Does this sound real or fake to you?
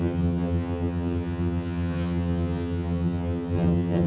fake